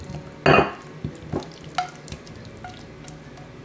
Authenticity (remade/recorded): recorded